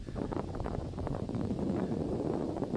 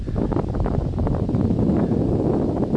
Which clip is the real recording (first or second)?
second